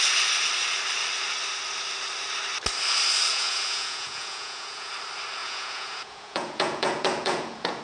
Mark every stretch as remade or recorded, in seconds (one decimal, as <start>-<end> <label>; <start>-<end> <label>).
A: 0.0-3.3 recorded; 3.3-4.9 remade; 4.9-5.4 recorded; 5.4-7.8 remade

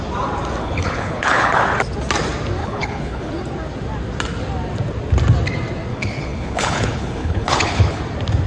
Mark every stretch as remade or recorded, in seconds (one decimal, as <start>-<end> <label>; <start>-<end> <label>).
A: 0.0-0.6 recorded; 0.6-1.6 remade; 1.6-2.6 recorded; 2.6-3.3 remade; 3.3-5.9 recorded; 5.9-8.0 remade; 8.0-8.5 recorded

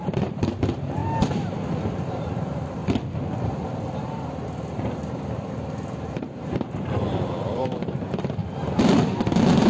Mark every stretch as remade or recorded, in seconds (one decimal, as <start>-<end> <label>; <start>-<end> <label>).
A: 0.0-1.0 remade; 1.0-2.2 recorded; 2.2-2.8 remade; 2.8-6.1 recorded; 6.1-8.4 remade; 8.4-9.7 recorded

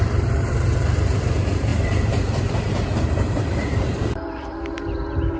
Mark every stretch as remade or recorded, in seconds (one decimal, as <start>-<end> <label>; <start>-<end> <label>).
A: 0.0-5.4 remade